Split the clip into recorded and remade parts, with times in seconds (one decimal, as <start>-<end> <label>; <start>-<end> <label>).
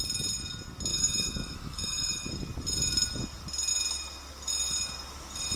0.0-0.9 recorded; 0.9-2.3 remade; 2.3-5.6 recorded